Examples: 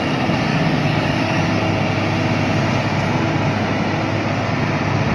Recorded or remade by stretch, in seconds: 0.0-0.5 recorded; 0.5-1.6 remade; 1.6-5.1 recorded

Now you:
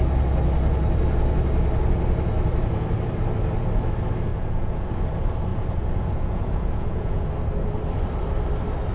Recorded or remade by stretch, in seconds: 0.0-4.3 recorded; 4.3-4.9 remade; 4.9-5.5 recorded; 5.5-7.3 remade; 7.3-8.9 recorded

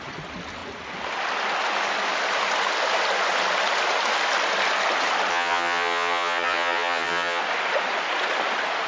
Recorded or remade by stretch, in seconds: 0.0-5.3 recorded; 5.3-7.4 remade; 7.4-8.9 recorded

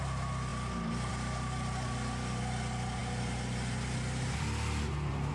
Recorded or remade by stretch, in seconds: 0.0-5.3 recorded

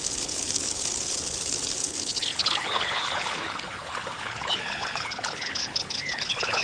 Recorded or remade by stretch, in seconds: 0.0-6.6 remade

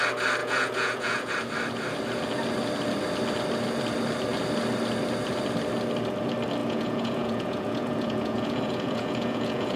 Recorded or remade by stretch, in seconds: 0.0-0.4 recorded; 0.4-1.3 remade; 1.3-6.6 recorded; 6.6-9.8 remade

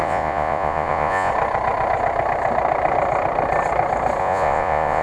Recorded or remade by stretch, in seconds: 0.0-1.3 remade; 1.3-4.2 recorded; 4.2-5.0 remade